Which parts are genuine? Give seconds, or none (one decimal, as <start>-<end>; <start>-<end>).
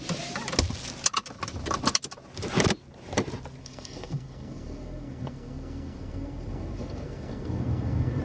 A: 0.0-3.6